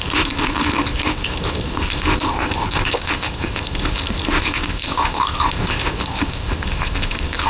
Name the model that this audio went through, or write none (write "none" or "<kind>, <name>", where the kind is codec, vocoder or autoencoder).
codec, ZipCodec